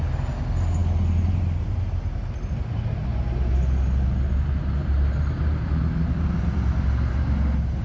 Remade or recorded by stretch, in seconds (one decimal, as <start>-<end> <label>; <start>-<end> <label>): 0.0-7.8 recorded